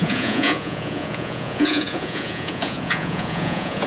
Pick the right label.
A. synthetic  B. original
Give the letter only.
A